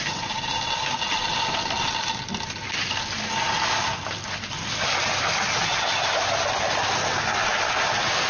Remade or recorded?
recorded